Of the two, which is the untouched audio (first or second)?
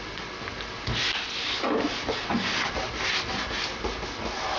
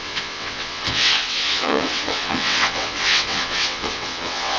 first